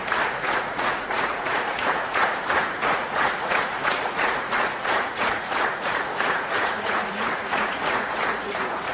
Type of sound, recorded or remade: remade